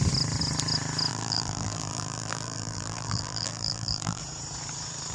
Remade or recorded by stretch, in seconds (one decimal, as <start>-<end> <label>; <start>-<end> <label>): 0.0-1.1 recorded; 1.1-4.2 remade; 4.2-5.1 recorded